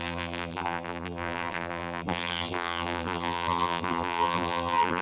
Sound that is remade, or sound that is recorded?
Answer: remade